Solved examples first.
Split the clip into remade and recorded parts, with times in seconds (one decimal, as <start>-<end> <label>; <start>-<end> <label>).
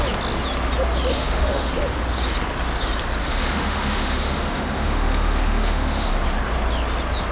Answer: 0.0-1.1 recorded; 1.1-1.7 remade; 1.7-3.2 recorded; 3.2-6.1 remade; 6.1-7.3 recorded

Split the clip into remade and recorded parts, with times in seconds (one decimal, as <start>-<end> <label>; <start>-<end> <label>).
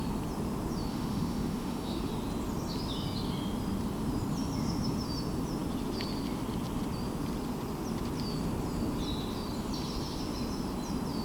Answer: 0.0-0.9 recorded; 0.9-2.1 remade; 2.1-11.2 recorded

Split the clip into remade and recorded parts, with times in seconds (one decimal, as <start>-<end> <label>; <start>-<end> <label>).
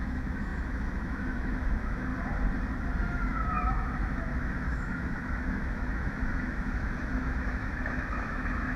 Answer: 0.0-2.1 remade; 2.1-3.3 recorded; 3.3-8.8 remade